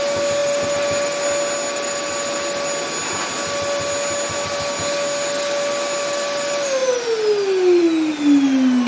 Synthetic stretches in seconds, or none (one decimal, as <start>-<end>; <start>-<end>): none